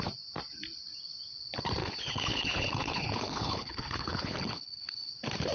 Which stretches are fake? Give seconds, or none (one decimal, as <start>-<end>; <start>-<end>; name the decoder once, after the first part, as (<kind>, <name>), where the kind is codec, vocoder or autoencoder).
1.8-5.1 (codec, HILCodec)